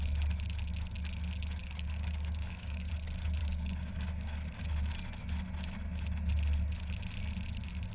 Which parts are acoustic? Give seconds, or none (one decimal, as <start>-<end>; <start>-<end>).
0.0-1.6; 2.9-3.4; 4.6-7.9